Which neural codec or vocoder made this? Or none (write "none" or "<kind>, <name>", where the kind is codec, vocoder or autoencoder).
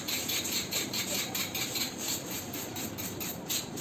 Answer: vocoder, BigVGAN v2